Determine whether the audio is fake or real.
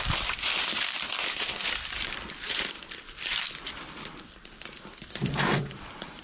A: fake